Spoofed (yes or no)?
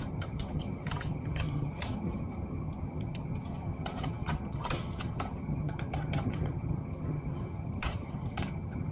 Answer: yes